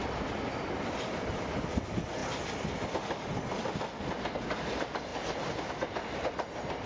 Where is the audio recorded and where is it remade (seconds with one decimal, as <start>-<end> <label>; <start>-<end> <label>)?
0.0-6.9 recorded